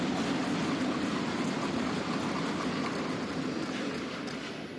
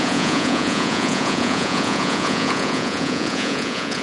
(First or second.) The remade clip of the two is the second